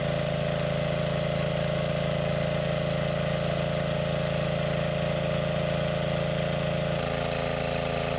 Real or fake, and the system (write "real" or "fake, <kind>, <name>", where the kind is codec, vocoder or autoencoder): real